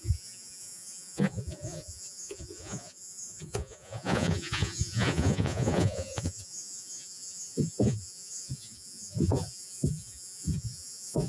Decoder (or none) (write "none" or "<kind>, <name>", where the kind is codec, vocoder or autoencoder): vocoder, Vocos